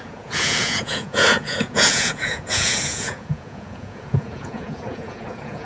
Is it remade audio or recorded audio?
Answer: remade